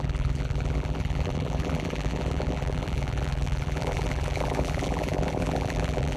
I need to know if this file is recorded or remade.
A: remade